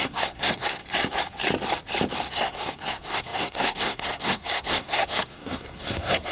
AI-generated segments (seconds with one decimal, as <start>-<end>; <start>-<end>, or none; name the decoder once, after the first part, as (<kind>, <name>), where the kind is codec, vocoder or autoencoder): 0.0-0.8 (codec, SNAC); 2.3-6.3